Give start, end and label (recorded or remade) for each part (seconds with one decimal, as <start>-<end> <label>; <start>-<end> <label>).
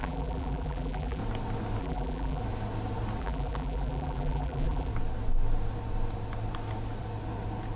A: 0.0-1.2 remade; 1.2-1.8 recorded; 1.8-2.4 remade; 2.4-3.2 recorded; 3.2-4.9 remade; 4.9-7.8 recorded